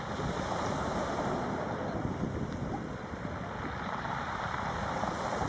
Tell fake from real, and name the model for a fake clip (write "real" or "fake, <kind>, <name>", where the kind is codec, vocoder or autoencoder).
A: fake, vocoder, BigVGAN v2